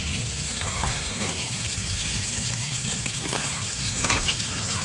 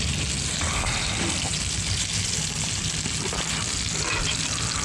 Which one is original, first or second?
second